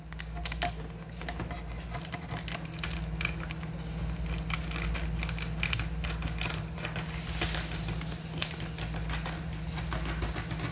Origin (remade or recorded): recorded